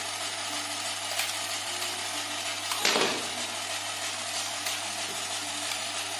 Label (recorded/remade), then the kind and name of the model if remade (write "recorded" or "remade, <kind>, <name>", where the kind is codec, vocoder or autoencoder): remade, vocoder, BigVGAN v2